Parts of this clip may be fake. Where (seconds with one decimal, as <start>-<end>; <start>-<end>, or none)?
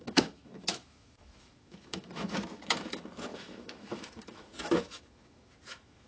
0.0-6.1